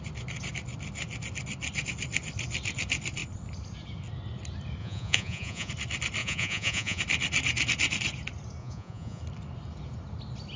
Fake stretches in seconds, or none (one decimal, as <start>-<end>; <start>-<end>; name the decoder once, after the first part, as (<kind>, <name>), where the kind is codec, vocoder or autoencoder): 4.8-5.7 (vocoder, Vocos); 6.2-7.0; 8.6-9.2